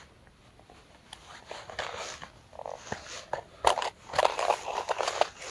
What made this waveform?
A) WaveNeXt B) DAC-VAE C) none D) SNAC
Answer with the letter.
C